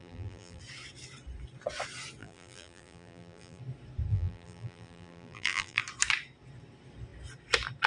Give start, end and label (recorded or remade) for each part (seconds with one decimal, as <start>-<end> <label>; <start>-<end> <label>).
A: 0.0-0.6 remade; 0.6-2.2 recorded; 2.2-3.6 remade; 3.6-4.1 recorded; 4.1-5.8 remade; 5.8-7.9 recorded